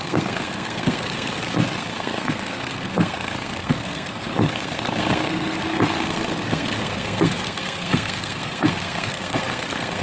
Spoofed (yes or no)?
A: yes